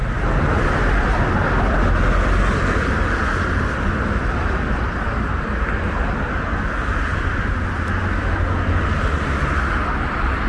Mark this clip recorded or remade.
recorded